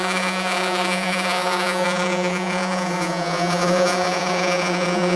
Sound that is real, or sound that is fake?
fake